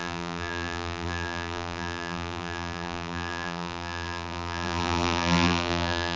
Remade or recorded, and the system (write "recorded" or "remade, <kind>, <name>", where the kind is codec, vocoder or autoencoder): remade, vocoder, BigVGAN v2